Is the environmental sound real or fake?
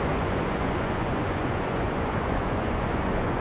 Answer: fake